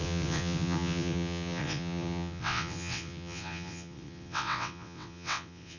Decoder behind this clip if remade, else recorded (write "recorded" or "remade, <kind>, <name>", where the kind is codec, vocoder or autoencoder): remade, vocoder, WaveNeXt